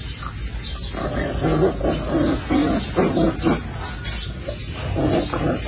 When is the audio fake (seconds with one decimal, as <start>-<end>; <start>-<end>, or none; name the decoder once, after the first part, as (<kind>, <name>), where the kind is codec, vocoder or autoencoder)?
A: none